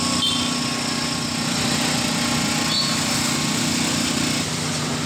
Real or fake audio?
real